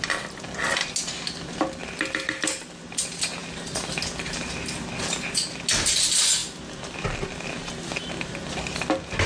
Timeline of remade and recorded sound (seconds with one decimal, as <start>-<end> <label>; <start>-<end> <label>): 0.0-9.3 recorded